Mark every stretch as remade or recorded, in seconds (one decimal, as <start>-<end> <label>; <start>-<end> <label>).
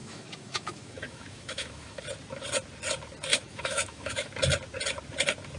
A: 0.0-2.0 remade; 2.0-3.3 recorded; 3.3-4.3 remade; 4.3-5.6 recorded